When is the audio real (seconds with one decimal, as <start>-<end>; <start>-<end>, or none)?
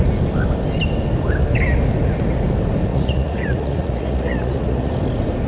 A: 0.0-2.9; 4.9-5.5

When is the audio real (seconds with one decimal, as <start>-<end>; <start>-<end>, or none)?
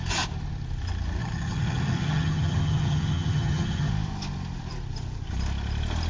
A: 0.0-1.2; 3.9-6.1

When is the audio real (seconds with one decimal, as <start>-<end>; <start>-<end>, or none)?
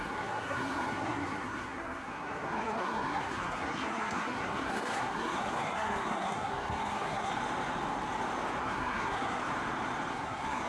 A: 7.3-8.6; 9.4-10.1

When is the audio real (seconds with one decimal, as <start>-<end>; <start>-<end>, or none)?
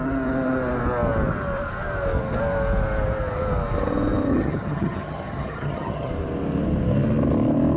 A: 0.0-4.3; 6.1-7.8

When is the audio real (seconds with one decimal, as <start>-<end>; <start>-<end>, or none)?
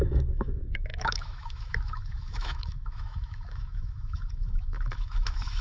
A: none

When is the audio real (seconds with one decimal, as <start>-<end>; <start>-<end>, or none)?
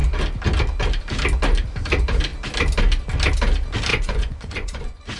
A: 0.0-3.9